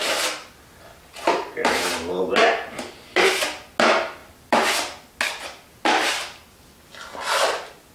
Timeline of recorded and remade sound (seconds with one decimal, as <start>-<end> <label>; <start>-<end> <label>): 0.0-4.2 recorded; 4.2-5.1 remade; 5.1-7.9 recorded